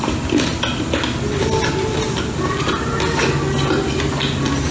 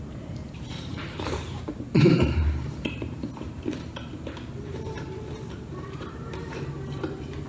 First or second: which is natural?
first